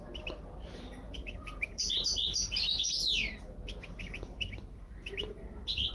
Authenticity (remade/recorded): remade